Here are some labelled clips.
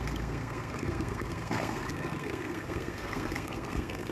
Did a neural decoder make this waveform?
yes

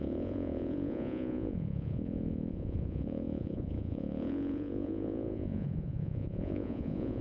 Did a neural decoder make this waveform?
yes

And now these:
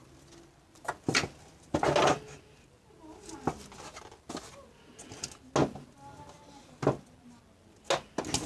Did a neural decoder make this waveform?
no